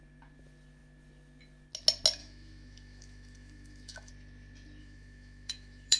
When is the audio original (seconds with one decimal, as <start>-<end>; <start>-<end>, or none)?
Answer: 0.0-2.2; 4.1-4.8